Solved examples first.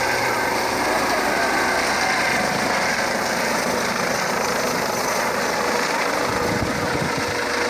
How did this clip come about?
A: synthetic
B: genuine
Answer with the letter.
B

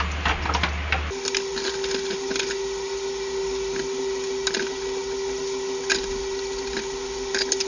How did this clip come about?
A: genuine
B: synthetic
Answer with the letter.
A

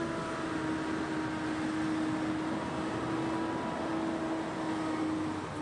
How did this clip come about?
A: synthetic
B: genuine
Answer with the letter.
B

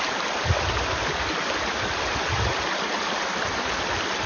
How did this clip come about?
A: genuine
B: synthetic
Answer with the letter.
A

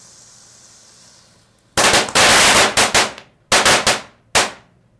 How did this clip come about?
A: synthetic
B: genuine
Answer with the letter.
B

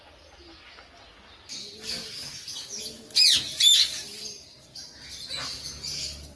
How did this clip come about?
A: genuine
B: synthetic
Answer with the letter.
A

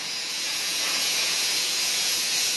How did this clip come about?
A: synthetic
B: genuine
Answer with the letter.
A